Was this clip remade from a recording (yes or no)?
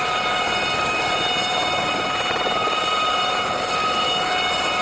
no